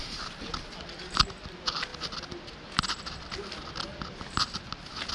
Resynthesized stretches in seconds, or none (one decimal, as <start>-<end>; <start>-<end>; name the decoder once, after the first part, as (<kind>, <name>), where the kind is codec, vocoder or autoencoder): none